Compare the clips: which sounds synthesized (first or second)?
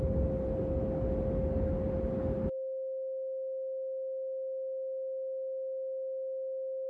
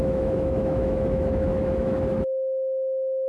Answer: second